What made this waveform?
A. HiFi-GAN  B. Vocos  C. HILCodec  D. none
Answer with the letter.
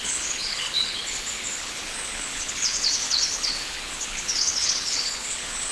C